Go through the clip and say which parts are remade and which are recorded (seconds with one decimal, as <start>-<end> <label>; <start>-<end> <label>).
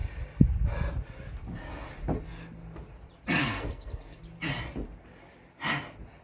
0.0-3.4 recorded; 3.4-4.2 remade; 4.2-6.2 recorded